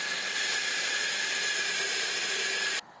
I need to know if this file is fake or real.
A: real